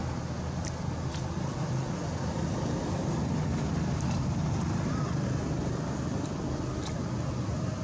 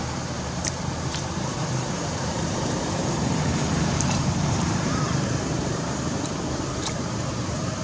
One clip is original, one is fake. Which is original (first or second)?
first